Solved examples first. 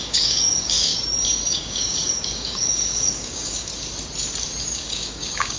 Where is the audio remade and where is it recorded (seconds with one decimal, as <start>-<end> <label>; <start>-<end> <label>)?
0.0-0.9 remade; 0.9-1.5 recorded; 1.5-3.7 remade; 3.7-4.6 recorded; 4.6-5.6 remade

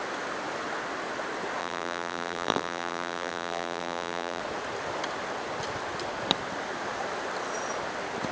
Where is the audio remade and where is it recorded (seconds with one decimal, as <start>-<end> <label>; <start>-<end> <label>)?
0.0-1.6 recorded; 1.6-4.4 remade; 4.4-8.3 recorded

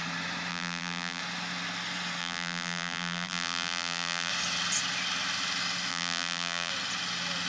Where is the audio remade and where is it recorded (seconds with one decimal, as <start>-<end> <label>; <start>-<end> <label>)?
0.0-0.5 recorded; 0.5-1.2 remade; 1.2-2.2 recorded; 2.2-4.3 remade; 4.3-5.9 recorded; 5.9-6.7 remade; 6.7-7.5 recorded

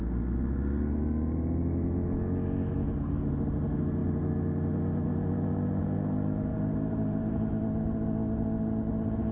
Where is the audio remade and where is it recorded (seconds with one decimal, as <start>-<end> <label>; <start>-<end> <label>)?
0.0-6.5 recorded; 6.5-7.5 remade; 7.5-9.3 recorded

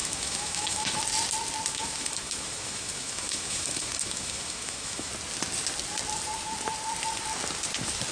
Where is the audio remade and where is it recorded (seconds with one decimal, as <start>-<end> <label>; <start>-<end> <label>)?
0.0-1.0 remade; 1.0-1.7 recorded; 1.7-5.1 remade; 5.1-8.1 recorded

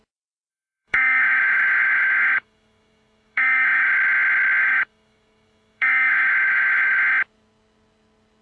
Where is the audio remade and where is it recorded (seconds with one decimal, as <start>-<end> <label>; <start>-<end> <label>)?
0.0-0.5 recorded; 0.5-3.9 remade; 3.9-4.6 recorded; 4.6-7.0 remade; 7.0-8.4 recorded